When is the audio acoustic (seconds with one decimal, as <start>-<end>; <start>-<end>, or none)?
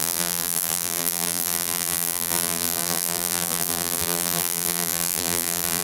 none